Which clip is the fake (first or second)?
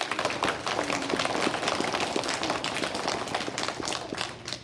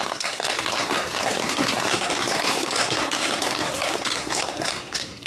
second